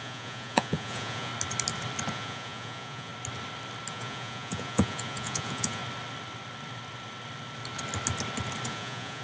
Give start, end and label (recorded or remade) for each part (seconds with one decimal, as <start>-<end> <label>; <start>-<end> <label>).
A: 0.0-1.3 remade; 1.3-2.1 recorded; 2.1-3.1 remade; 3.1-3.9 recorded; 3.9-5.8 remade; 5.8-8.7 recorded; 8.7-9.2 remade